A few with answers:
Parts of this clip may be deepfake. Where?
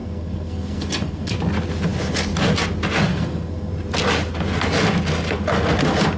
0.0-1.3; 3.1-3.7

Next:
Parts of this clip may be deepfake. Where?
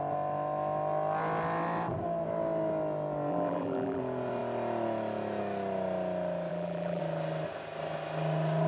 3.3-4.0; 6.5-7.0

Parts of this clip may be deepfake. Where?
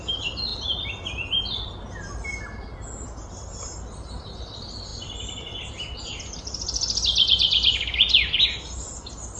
none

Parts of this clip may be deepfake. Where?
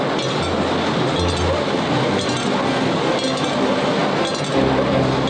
none